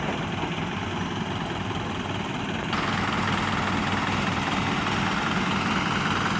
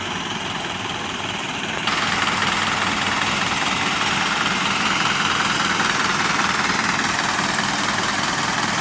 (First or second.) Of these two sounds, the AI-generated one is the second